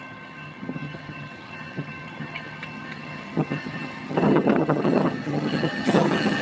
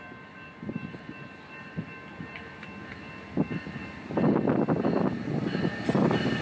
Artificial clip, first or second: first